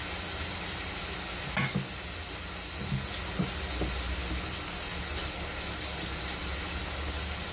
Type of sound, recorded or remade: recorded